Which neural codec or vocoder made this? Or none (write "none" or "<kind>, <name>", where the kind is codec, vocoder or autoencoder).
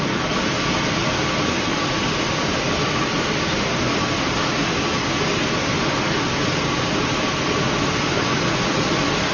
none